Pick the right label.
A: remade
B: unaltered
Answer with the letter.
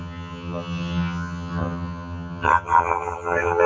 A